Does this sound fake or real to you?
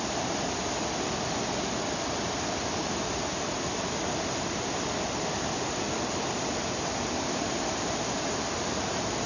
real